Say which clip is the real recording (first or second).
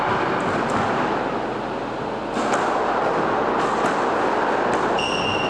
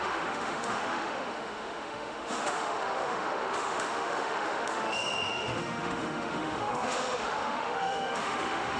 first